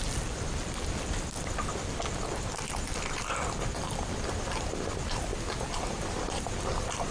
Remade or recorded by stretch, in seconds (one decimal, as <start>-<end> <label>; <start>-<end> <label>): 0.0-7.1 remade